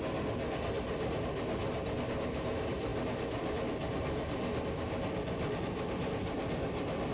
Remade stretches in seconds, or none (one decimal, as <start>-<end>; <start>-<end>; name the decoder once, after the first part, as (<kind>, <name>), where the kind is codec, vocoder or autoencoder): none